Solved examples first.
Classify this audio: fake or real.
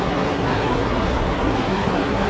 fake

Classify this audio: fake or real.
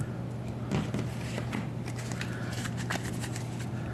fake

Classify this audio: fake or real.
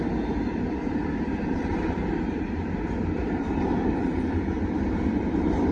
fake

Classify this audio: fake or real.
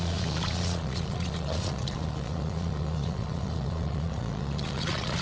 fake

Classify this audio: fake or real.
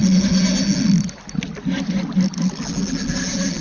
real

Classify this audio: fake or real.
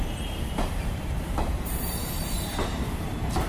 fake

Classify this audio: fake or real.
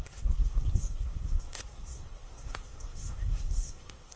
fake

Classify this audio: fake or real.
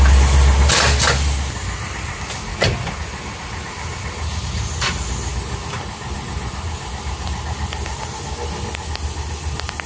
real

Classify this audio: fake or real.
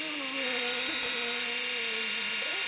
real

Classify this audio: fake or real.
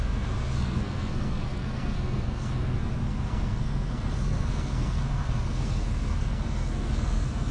fake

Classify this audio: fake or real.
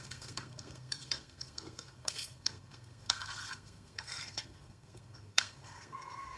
fake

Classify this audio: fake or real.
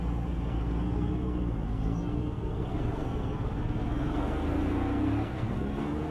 fake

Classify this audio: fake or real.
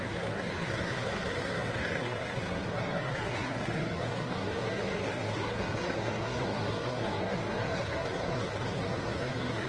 fake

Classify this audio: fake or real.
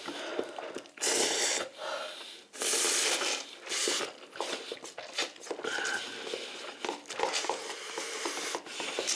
real